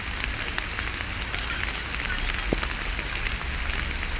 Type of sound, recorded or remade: recorded